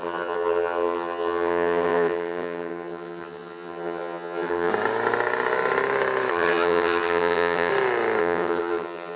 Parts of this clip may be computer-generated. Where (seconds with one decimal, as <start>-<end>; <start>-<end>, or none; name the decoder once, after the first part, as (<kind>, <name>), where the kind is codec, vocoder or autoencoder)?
0.0-4.7 (vocoder, HiFi-GAN); 6.3-7.7; 8.2-9.2